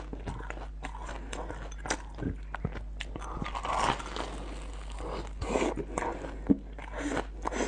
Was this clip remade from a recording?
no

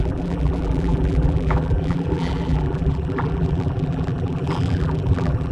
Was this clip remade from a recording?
yes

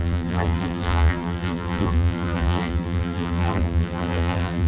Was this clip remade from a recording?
yes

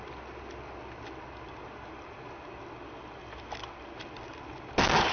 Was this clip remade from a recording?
no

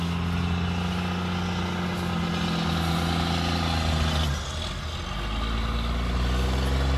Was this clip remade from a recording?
no